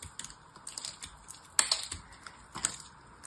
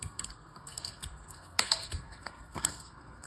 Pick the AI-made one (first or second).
second